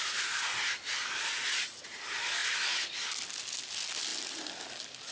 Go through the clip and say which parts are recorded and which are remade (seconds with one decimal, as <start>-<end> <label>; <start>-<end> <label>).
0.0-5.1 recorded